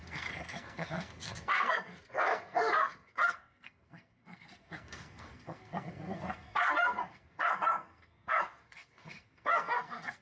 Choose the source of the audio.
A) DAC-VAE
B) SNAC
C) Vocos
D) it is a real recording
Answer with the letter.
B